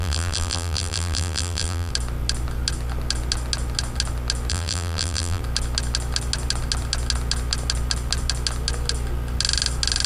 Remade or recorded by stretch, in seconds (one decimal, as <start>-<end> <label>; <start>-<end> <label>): 0.0-1.9 remade; 1.9-4.5 recorded; 4.5-5.4 remade; 5.4-10.1 recorded